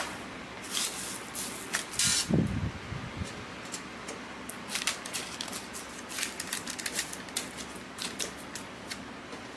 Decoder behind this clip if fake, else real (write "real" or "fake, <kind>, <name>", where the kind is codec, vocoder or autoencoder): real